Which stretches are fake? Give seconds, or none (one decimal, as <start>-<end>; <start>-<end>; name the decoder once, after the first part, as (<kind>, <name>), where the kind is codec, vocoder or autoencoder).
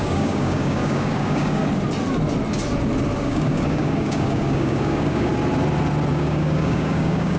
0.0-1.6 (codec, DAC); 3.2-5.3; 6.1-7.4